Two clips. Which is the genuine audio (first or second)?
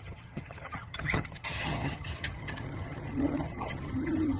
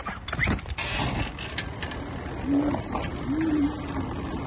second